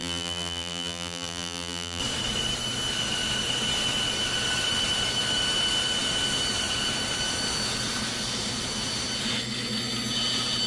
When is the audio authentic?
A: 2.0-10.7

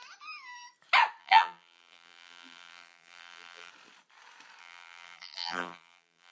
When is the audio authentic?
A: 0.0-1.2; 3.7-4.6

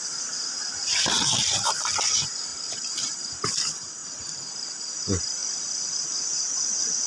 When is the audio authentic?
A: 0.0-5.4; 6.1-7.1

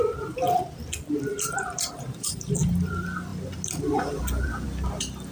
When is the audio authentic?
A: 0.0-1.3; 2.5-5.3

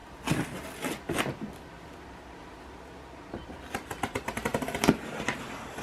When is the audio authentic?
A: 0.0-3.5

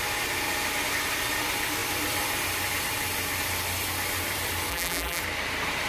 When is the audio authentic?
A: 0.0-4.7; 5.2-5.9

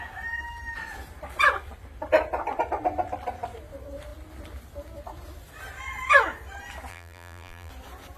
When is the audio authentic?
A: 0.0-6.9; 7.7-8.2